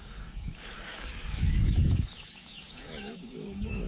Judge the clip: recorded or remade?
remade